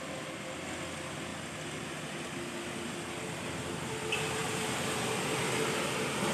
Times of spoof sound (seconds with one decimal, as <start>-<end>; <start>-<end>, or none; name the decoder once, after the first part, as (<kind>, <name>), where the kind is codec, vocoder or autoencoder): none